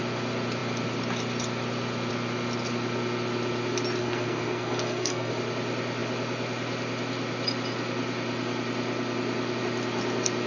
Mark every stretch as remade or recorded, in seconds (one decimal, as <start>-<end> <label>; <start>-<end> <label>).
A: 0.0-4.0 recorded; 4.0-5.3 remade; 5.3-10.5 recorded